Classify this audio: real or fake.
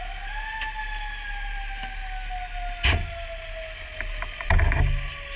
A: real